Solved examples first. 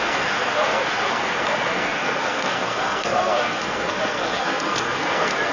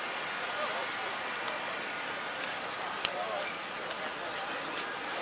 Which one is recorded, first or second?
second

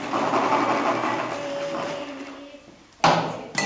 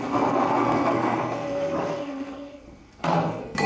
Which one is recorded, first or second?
first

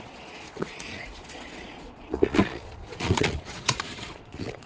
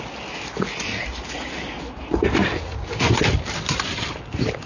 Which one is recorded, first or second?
second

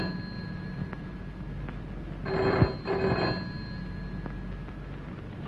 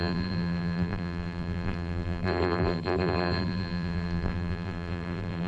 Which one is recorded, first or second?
first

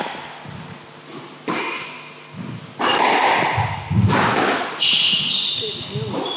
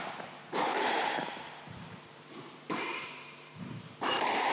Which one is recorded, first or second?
first